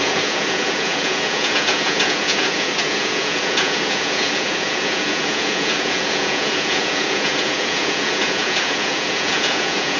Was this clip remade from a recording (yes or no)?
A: yes